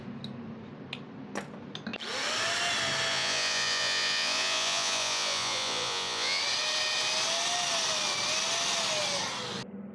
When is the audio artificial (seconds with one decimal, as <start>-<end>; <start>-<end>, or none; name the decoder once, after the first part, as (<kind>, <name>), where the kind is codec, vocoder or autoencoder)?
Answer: 3.1-6.4 (vocoder, Vocos)